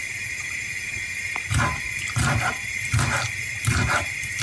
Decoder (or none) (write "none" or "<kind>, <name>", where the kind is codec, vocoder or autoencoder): none